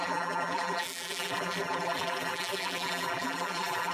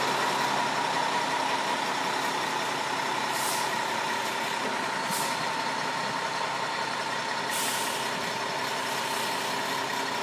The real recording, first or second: second